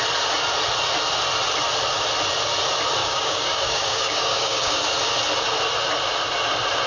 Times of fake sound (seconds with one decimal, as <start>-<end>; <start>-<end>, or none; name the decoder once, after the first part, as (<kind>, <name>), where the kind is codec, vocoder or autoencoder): 3.0-4.7 (codec, DAC)